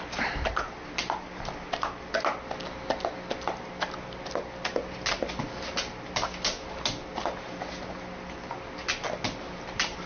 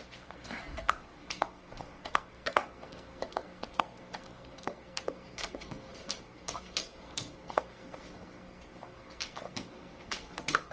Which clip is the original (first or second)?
first